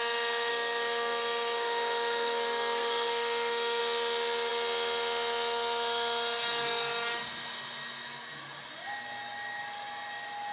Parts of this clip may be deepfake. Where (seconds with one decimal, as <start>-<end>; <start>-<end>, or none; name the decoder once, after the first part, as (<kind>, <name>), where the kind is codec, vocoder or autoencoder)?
0.5-3.8 (codec, SNAC)